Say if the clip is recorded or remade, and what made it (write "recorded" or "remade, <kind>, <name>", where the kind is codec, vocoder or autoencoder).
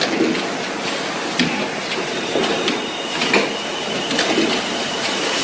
recorded